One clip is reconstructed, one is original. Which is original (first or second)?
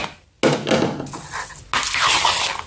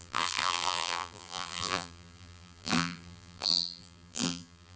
first